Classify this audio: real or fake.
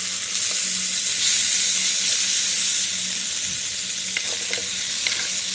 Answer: real